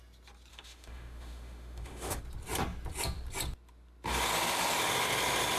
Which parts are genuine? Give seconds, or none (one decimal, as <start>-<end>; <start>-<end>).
0.0-0.5; 2.2-5.6